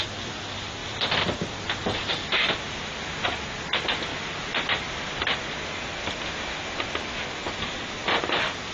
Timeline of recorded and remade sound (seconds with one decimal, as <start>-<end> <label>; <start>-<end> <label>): 0.0-4.1 recorded; 4.1-5.1 remade; 5.1-7.4 recorded; 7.4-7.9 remade; 7.9-8.7 recorded